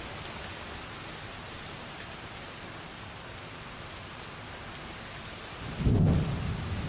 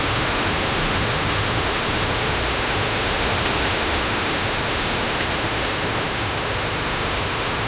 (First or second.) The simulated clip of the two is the second